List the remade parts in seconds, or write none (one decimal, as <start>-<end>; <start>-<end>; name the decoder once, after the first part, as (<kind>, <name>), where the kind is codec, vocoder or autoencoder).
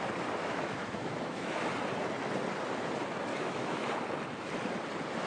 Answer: 0.4-1.7 (autoencoder, DAC-VAE); 3.3-3.9